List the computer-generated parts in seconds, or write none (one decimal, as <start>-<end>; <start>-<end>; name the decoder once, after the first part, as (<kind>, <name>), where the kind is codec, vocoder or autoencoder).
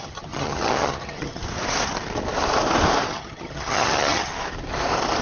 0.0-1.4 (vocoder, HiFi-GAN); 3.1-4.3